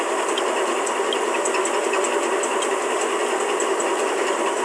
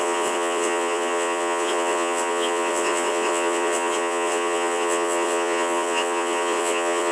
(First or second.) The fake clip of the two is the second